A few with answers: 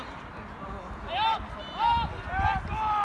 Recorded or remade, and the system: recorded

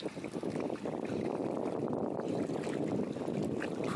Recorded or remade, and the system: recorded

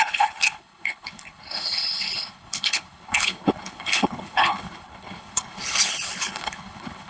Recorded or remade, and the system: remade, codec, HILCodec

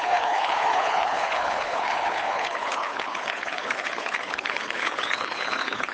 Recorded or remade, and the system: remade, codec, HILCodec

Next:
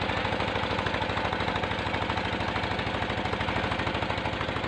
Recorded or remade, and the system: recorded